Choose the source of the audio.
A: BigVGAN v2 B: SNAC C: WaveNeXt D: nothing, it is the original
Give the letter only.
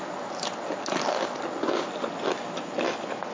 D